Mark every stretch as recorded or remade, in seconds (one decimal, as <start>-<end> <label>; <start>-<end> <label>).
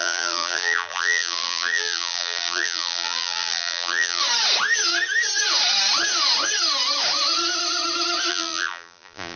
0.0-4.2 remade; 4.2-8.3 recorded; 8.3-9.4 remade